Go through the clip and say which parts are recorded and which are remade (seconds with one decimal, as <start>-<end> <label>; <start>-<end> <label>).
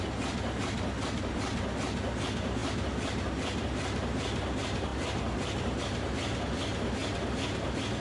0.0-8.0 recorded